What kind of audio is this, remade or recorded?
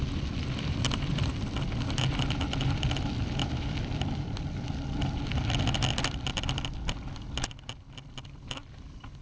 recorded